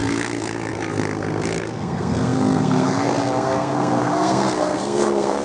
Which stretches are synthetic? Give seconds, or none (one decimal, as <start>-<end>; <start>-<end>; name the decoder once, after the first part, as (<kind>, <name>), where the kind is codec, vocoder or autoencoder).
0.0-5.4 (codec, SNAC)